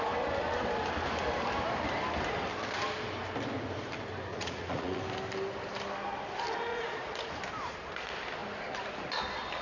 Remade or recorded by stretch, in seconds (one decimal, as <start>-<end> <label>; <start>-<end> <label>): 0.0-4.3 recorded; 4.3-5.0 remade; 5.0-6.7 recorded; 6.7-7.4 remade; 7.4-9.6 recorded